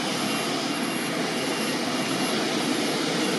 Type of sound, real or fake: real